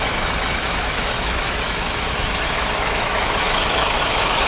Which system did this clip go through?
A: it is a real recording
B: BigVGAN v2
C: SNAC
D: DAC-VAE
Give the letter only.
D